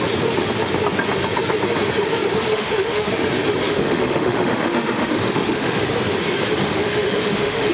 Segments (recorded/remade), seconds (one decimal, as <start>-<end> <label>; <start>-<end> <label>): 0.0-2.5 recorded; 2.5-3.1 remade; 3.1-3.6 recorded; 3.6-5.9 remade; 5.9-6.6 recorded; 6.6-7.7 remade